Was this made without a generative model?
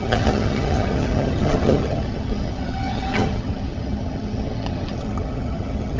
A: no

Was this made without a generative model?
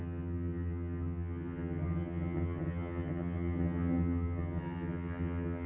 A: no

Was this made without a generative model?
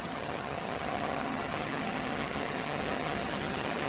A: no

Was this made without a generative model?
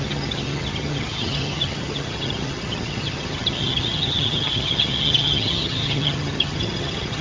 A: no